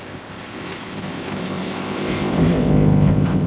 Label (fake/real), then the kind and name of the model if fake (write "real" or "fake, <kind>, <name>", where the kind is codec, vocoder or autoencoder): fake, codec, ZipCodec